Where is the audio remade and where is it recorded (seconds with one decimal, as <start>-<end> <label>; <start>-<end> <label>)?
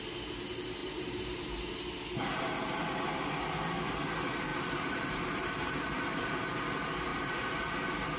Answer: 0.0-0.8 recorded; 0.8-1.7 remade; 1.7-4.5 recorded; 4.5-6.4 remade; 6.4-7.1 recorded; 7.1-8.2 remade